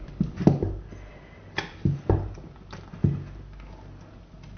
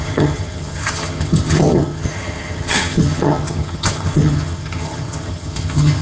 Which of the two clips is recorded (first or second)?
first